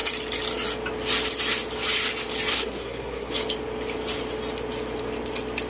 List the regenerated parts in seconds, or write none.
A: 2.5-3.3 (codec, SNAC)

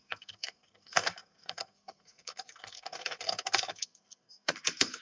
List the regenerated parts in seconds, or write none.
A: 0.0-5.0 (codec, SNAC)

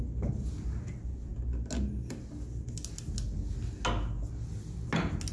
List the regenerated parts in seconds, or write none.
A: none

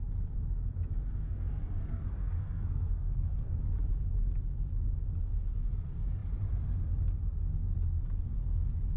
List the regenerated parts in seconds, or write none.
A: 1.2-3.6 (codec, SNAC)

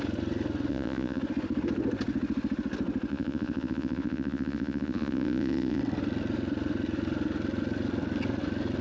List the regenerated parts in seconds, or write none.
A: 0.7-1.2 (vocoder, Vocos); 3.1-5.8

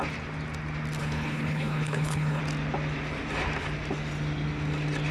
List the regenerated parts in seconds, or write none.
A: 1.0-2.4 (codec, HILCodec)